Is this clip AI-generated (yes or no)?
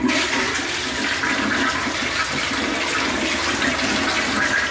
no